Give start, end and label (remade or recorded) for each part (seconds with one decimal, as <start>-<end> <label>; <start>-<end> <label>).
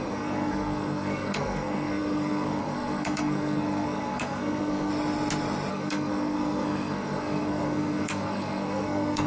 0.0-4.9 remade; 4.9-5.7 recorded; 5.7-9.3 remade